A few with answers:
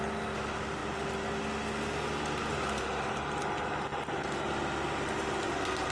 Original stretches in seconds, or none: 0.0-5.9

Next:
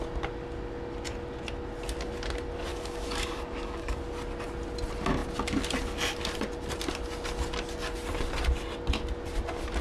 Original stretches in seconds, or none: 0.0-2.7; 4.0-9.8

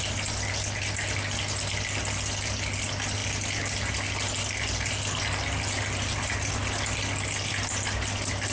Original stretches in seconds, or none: 0.0-8.5

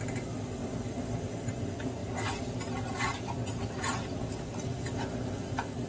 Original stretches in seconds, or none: 0.0-5.9